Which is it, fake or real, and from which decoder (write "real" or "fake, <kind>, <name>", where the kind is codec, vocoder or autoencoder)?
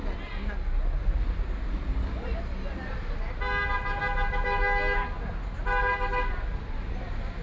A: real